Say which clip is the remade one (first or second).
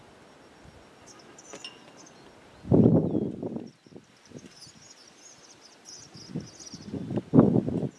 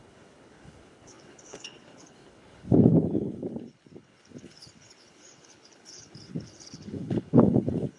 second